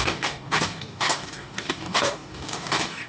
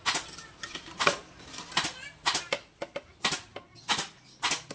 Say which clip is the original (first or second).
second